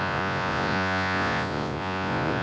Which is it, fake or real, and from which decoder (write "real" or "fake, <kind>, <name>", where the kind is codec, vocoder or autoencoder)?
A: fake, vocoder, Vocos